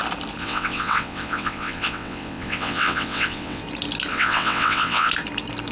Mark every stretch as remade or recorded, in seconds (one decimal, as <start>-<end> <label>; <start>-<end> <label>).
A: 0.0-0.4 recorded; 0.4-3.6 remade; 3.6-4.1 recorded; 4.1-5.1 remade; 5.1-5.7 recorded